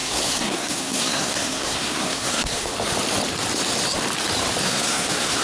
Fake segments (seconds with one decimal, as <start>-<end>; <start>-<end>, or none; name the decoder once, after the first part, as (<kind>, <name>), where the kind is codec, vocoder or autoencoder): 0.0-2.7 (codec, SNAC); 4.6-5.4